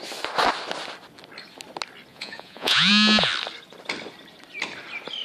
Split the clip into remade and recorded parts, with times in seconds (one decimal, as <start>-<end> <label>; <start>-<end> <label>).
0.0-2.1 recorded; 2.1-2.9 remade; 2.9-5.2 recorded